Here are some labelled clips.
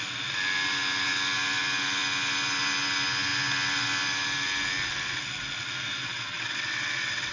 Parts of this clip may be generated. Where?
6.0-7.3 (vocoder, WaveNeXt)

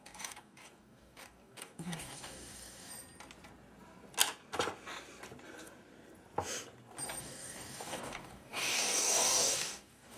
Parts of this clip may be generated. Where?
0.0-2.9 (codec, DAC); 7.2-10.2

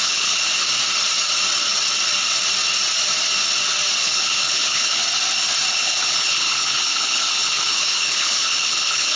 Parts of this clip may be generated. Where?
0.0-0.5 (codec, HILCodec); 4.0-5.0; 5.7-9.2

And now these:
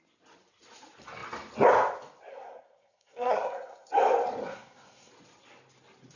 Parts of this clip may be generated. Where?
2.3-3.9 (codec, SNAC); 4.4-5.1

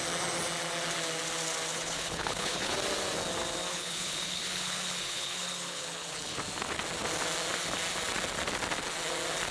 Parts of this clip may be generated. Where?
1.7-2.7 (codec, HILCodec); 3.7-6.4